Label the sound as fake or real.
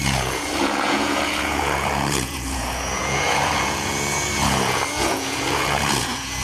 fake